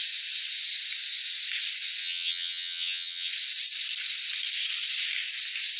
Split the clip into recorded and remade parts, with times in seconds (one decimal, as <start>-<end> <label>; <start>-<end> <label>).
0.0-2.0 recorded; 2.0-3.3 remade; 3.3-5.8 recorded